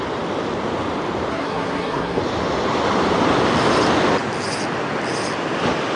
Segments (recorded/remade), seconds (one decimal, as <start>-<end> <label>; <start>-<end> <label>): 0.0-1.3 recorded; 1.3-2.2 remade; 2.2-6.0 recorded